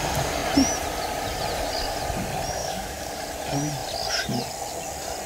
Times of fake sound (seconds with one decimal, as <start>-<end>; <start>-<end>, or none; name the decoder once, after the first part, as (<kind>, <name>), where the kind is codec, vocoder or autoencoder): 2.6-3.2 (codec, DAC)